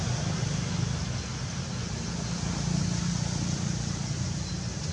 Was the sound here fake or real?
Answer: real